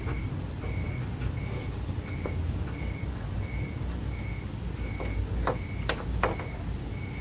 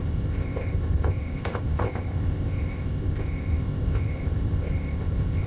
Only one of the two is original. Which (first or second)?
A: first